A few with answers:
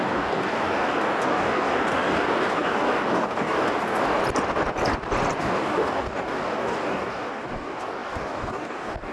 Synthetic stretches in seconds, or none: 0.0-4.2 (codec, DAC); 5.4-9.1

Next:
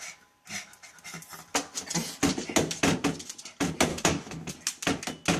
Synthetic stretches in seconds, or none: 3.9-4.5 (codec, DAC)

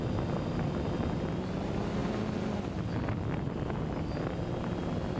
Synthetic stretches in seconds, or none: none

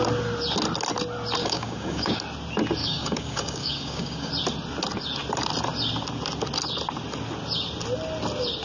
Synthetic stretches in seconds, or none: 1.4-2.2 (codec, DAC); 2.8-4.3

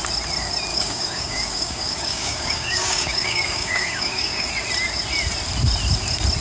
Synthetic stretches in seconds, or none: 0.7-4.5 (codec, DAC)